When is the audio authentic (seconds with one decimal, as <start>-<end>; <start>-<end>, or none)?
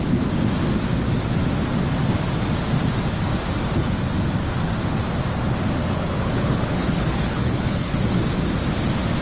0.0-5.8; 8.0-9.2